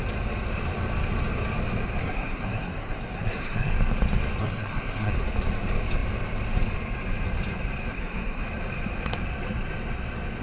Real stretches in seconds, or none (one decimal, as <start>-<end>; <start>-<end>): 0.0-2.0; 3.7-4.4; 5.1-7.9; 8.4-10.4